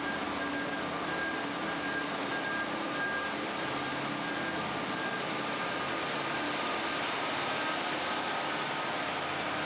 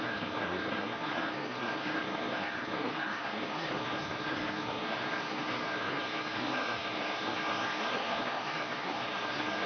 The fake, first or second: second